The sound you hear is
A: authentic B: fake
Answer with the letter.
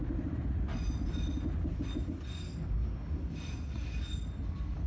A